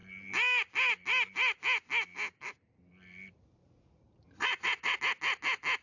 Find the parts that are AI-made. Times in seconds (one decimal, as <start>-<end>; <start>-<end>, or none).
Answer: 3.6-5.0